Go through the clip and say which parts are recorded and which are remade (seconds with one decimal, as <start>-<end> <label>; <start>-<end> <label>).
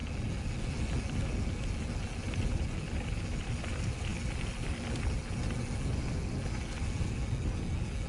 0.0-8.1 recorded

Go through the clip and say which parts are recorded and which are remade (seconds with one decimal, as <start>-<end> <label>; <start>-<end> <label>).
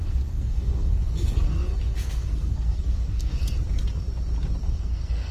0.0-3.4 remade; 3.4-4.6 recorded; 4.6-5.3 remade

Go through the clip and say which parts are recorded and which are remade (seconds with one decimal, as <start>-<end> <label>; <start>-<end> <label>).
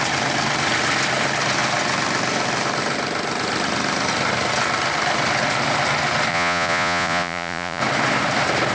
0.0-6.3 recorded; 6.3-7.8 remade; 7.8-8.7 recorded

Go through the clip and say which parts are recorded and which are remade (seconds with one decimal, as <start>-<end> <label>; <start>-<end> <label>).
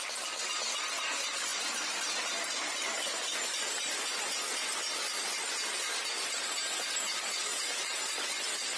0.0-7.5 recorded; 7.5-8.3 remade; 8.3-8.8 recorded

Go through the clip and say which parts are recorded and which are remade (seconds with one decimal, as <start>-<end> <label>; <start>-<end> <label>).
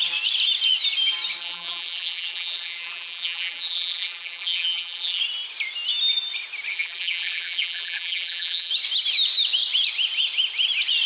0.0-1.4 recorded; 1.4-5.2 remade; 5.2-6.7 recorded; 6.7-8.7 remade; 8.7-11.1 recorded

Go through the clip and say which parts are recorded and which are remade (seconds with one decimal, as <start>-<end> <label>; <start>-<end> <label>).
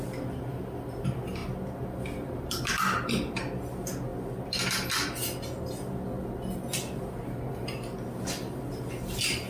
0.0-9.5 recorded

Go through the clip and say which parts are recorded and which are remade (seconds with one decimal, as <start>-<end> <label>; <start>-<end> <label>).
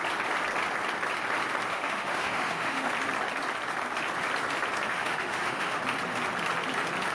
0.0-1.7 recorded; 1.7-2.9 remade; 2.9-4.9 recorded; 4.9-5.8 remade; 5.8-7.1 recorded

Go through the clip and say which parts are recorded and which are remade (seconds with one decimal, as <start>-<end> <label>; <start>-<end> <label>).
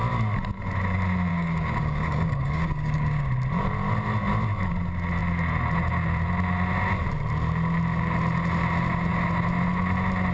0.0-1.3 recorded; 1.3-3.3 remade; 3.3-10.3 recorded